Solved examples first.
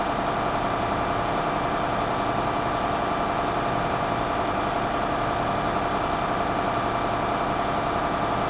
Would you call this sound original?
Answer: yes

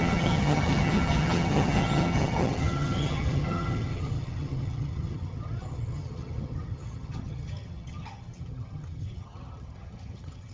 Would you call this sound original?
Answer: no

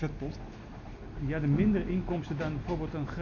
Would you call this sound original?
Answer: yes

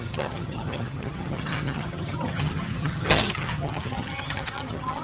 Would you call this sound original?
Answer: no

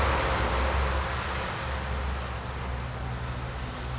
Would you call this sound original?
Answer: yes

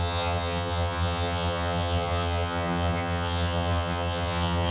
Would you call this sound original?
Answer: no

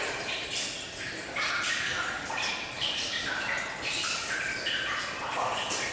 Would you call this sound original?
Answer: yes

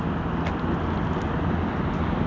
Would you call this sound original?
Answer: yes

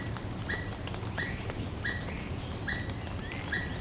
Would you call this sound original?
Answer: yes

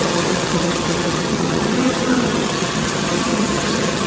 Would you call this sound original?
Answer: no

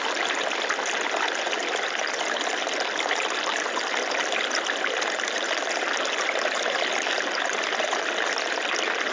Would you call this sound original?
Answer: yes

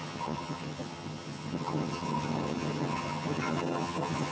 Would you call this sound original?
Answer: no